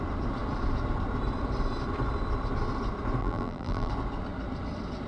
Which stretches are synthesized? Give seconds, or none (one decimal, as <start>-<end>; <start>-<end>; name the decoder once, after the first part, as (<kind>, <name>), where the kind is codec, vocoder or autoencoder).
3.2-3.9 (vocoder, BigVGAN v2)